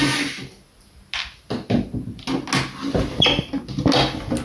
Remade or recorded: recorded